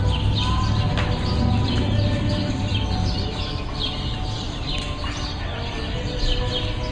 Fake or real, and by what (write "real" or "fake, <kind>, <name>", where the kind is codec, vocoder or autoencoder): real